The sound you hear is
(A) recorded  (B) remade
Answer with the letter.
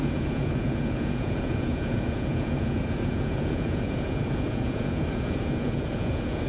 B